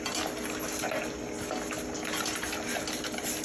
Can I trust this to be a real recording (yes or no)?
yes